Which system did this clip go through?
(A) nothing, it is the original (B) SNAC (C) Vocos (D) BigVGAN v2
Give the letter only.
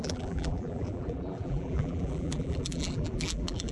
D